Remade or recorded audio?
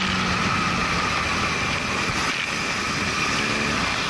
recorded